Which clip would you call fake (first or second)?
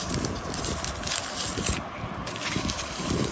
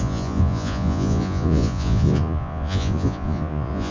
second